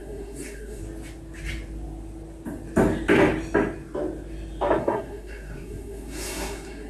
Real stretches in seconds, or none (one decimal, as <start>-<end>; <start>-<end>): 0.8-4.8